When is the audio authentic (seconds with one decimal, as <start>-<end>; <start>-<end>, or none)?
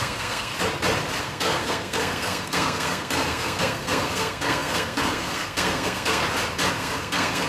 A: 0.5-1.2; 6.2-6.7